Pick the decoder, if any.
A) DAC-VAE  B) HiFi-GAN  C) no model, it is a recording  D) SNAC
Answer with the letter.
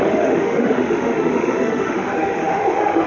A